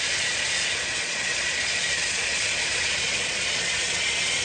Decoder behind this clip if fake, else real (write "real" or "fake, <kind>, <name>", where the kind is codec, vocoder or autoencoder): fake, vocoder, Vocos